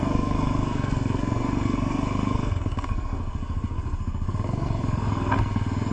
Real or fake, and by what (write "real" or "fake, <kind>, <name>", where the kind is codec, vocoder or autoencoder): fake, codec, SNAC